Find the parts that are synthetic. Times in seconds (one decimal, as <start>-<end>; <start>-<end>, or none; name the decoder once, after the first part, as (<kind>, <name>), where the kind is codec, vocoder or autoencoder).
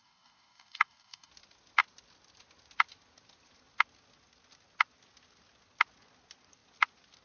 0.0-1.3 (codec, DAC)